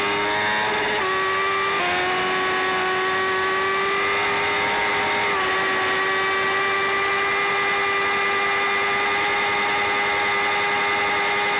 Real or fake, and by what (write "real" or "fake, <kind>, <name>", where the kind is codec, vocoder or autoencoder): real